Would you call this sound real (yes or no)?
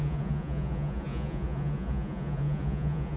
no